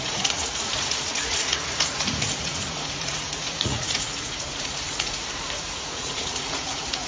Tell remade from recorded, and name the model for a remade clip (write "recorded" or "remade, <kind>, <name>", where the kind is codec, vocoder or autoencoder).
remade, vocoder, Vocos